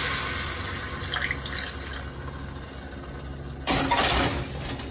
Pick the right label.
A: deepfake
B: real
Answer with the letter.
B